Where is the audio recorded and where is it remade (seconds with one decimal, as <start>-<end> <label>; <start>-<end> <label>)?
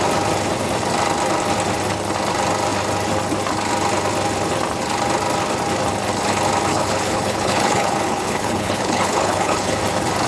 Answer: 0.0-6.7 recorded; 6.7-9.8 remade; 9.8-10.3 recorded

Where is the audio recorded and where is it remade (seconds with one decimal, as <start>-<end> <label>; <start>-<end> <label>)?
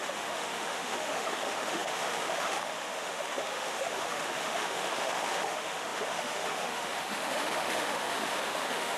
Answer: 0.0-9.0 remade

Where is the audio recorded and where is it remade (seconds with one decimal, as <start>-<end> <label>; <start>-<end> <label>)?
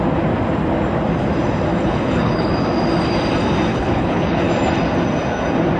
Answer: 0.0-1.7 recorded; 1.7-2.5 remade; 2.5-3.7 recorded; 3.7-4.5 remade; 4.5-5.8 recorded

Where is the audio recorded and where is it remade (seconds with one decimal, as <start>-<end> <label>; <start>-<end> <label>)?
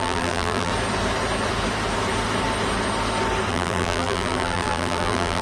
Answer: 0.0-0.7 remade; 0.7-3.5 recorded; 3.5-5.4 remade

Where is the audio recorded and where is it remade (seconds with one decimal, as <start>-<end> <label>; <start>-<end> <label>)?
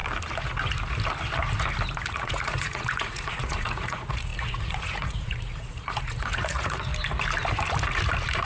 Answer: 0.0-2.1 recorded; 2.1-6.9 remade; 6.9-8.5 recorded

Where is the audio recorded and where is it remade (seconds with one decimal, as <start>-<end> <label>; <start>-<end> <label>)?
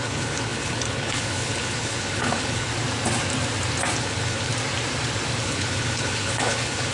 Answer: 0.0-2.7 remade; 2.7-4.0 recorded; 4.0-4.5 remade; 4.5-5.4 recorded; 5.4-6.9 remade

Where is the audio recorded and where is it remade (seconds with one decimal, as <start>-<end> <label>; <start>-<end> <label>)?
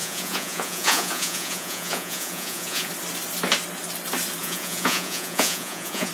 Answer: 0.0-2.9 remade; 2.9-4.4 recorded; 4.4-6.1 remade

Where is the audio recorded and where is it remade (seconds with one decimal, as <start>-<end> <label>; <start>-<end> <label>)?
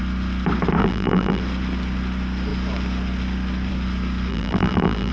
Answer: 0.0-0.8 recorded; 0.8-1.4 remade; 1.4-4.3 recorded; 4.3-5.1 remade